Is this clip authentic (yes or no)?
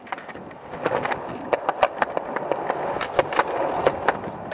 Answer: yes